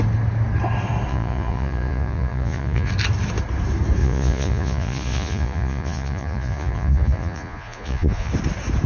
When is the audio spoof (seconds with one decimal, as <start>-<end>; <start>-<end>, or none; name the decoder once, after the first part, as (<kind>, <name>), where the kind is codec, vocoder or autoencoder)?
1.1-2.9 (vocoder, Vocos); 4.0-8.3